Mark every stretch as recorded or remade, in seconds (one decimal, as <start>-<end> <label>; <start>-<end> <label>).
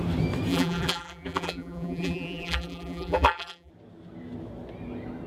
0.0-0.5 recorded; 0.5-3.7 remade; 3.7-5.3 recorded